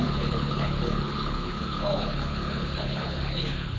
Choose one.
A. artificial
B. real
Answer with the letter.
A